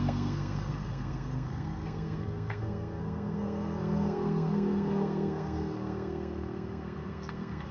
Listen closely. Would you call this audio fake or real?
fake